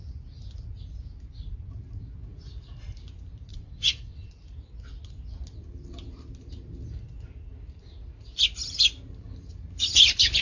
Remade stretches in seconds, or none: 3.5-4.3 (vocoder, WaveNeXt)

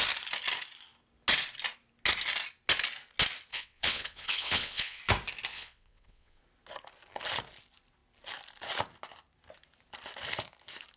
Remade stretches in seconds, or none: 3.5-5.0 (vocoder, WaveNeXt); 5.5-6.4